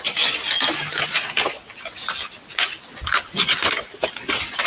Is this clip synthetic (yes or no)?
no